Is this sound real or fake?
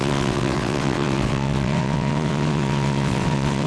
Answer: fake